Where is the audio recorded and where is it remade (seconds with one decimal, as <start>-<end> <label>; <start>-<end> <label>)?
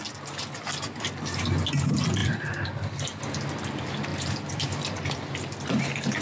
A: 0.0-2.2 recorded; 2.2-3.2 remade; 3.2-4.1 recorded; 4.1-5.4 remade; 5.4-6.2 recorded